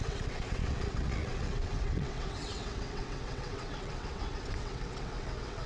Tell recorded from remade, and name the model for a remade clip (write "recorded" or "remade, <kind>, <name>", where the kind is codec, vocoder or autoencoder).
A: remade, vocoder, WaveNeXt